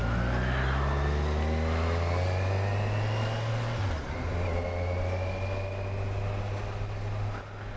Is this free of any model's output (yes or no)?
yes